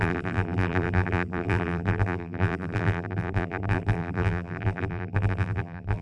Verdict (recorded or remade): remade